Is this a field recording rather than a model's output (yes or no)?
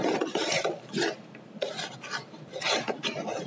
yes